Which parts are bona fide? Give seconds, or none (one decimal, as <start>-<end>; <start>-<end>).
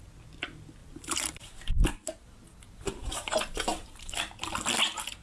0.0-0.8; 1.9-3.0; 4.1-5.2